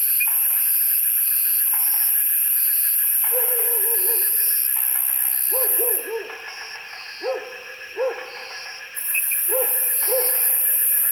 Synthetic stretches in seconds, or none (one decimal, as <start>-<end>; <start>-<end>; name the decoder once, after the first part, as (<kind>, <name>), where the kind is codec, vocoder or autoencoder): 0.0-4.6 (vocoder, BigVGAN v2); 5.5-11.1